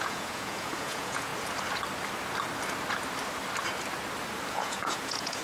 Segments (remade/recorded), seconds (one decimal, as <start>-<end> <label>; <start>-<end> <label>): 0.0-1.3 remade; 1.3-4.5 recorded; 4.5-5.4 remade